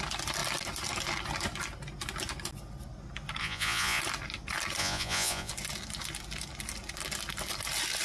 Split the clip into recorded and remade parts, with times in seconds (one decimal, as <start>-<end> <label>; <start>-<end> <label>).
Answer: 0.0-3.4 recorded; 3.4-4.0 remade; 4.0-4.8 recorded; 4.8-5.5 remade; 5.5-8.0 recorded